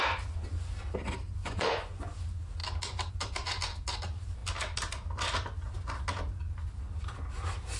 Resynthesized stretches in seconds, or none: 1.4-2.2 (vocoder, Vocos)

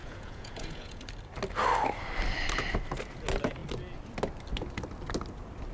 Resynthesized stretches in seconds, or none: 0.0-1.0 (vocoder, Vocos)

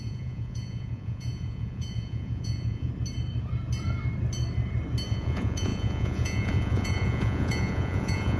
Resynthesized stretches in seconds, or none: 0.0-2.9 (vocoder, Vocos); 5.1-8.4